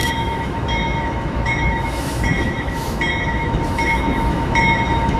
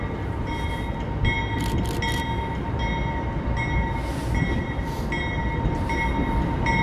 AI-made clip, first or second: first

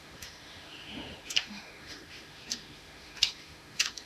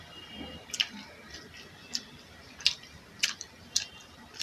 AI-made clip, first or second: first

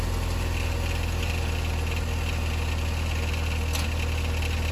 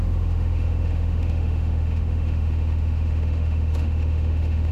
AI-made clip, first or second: second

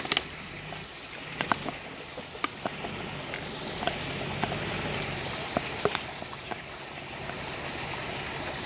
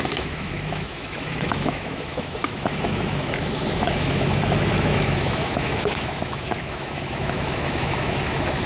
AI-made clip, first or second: second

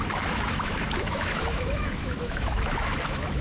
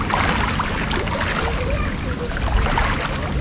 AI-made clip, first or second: first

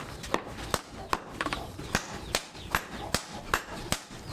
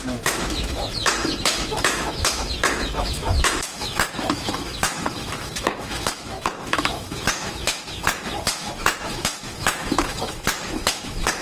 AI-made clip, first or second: second